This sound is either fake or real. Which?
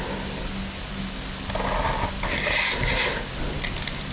real